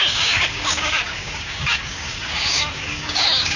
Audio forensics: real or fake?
fake